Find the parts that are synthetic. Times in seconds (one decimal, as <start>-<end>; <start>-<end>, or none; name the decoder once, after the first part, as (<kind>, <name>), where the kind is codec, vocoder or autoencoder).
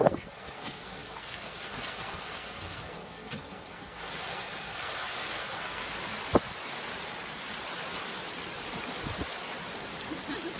0.0-5.8 (codec, SNAC)